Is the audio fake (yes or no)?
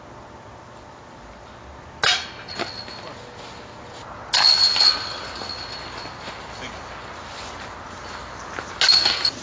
no